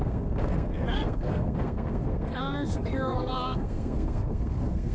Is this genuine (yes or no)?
no